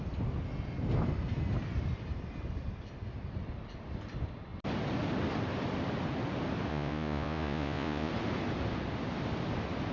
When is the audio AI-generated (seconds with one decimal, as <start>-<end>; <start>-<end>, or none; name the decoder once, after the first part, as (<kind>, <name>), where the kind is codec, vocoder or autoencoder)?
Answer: 6.7-8.1 (vocoder, Vocos)